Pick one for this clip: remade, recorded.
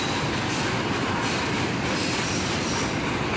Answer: recorded